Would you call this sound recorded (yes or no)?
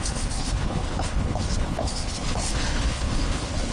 no